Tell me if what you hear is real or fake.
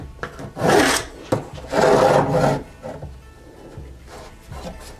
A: real